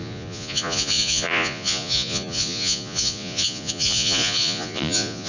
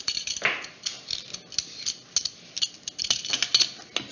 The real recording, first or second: second